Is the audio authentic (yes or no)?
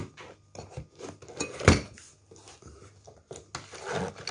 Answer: yes